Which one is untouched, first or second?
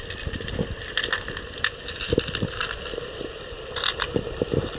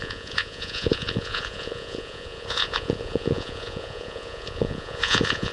first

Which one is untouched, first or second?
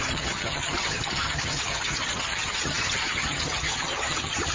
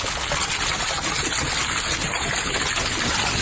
second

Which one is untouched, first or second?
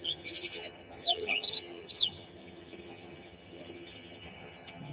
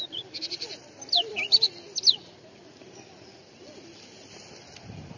second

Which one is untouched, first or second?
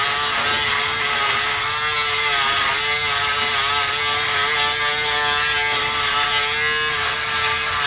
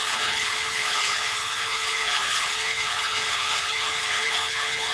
first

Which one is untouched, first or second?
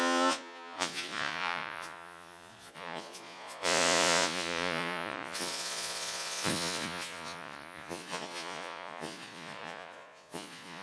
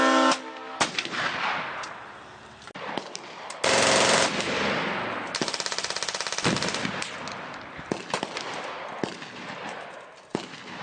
second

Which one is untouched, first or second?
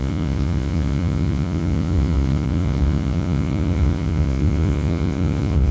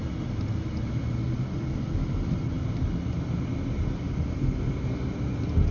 second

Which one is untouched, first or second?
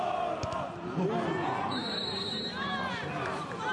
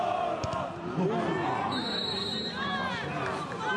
second